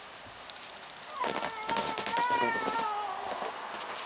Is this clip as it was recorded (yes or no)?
yes